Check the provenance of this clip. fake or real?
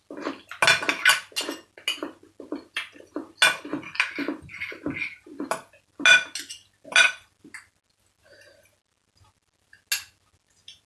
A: real